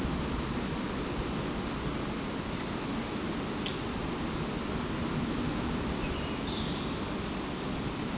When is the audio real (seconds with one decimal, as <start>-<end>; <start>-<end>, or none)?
0.0-8.2